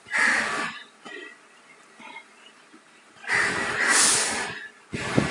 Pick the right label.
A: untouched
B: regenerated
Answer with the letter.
A